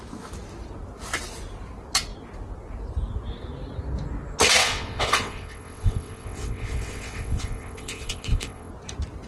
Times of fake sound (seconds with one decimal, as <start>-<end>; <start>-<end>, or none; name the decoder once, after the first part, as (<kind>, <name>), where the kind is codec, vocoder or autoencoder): 4.6-8.7 (vocoder, WaveNeXt)